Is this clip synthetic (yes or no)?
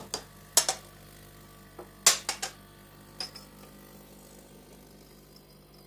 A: no